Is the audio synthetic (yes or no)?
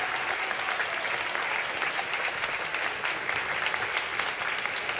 no